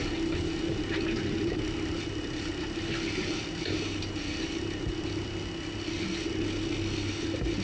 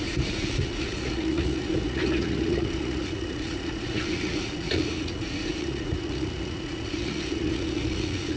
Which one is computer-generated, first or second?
second